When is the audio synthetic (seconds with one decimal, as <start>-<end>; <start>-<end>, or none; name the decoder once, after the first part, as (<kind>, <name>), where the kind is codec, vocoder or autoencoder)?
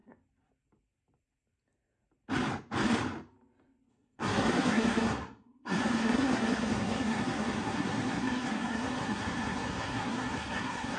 3.9-11.0 (codec, SNAC)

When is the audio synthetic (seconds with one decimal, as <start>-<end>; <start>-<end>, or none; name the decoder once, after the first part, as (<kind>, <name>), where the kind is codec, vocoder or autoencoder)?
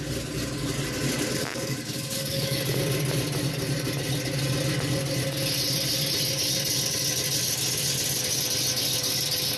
1.4-2.8 (codec, DAC)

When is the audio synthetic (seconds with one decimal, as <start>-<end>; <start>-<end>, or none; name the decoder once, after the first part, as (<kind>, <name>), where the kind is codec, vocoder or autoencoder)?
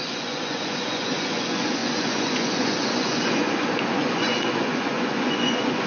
0.0-5.9 (vocoder, Vocos)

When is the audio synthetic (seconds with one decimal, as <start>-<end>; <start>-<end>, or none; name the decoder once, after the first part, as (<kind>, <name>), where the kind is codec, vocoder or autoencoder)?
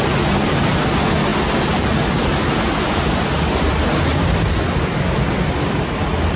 none